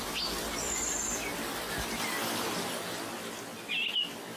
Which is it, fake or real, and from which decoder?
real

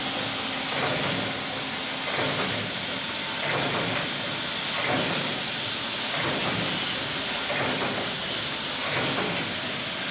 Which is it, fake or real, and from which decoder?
real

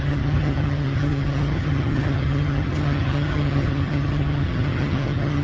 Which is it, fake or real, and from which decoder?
fake, vocoder, HiFi-GAN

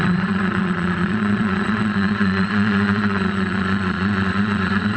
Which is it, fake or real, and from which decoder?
fake, vocoder, Vocos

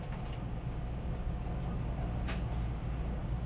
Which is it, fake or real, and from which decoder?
real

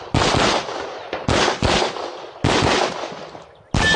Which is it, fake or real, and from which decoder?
real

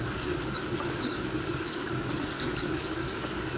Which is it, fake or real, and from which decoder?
fake, codec, DAC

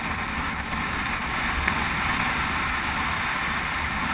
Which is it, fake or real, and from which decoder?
real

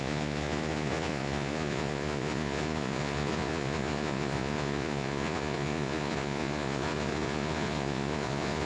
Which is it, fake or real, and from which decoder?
fake, vocoder, Vocos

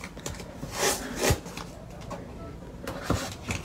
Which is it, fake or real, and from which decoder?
real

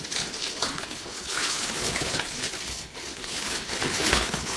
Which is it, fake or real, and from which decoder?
fake, codec, HILCodec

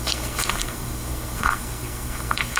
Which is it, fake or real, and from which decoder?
fake, codec, SNAC